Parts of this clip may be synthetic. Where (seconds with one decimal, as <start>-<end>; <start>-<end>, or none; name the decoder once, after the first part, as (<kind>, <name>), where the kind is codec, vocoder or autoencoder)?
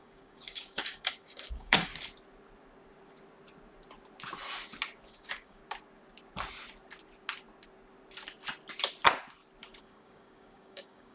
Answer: 0.0-1.9 (codec, DAC); 5.1-5.6; 9.8-11.1